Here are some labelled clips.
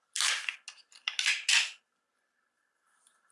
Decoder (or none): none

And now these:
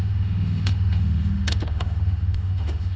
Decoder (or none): autoencoder, DAC-VAE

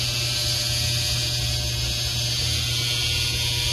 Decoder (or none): none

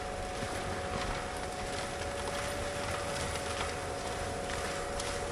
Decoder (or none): none